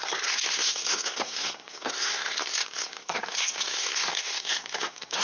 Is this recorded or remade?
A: remade